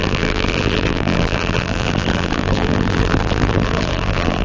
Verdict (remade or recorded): remade